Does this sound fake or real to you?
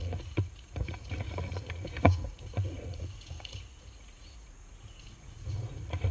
fake